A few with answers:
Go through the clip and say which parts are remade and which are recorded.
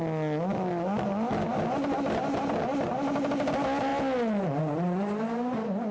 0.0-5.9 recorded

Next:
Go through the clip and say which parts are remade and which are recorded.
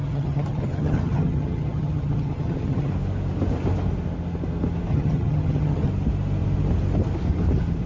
0.0-2.9 remade; 2.9-4.9 recorded; 4.9-5.9 remade; 5.9-7.9 recorded